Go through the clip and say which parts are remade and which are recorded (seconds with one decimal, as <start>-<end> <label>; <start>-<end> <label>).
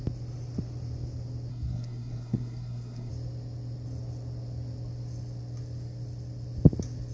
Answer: 0.0-1.5 recorded; 1.5-3.1 remade; 3.1-7.1 recorded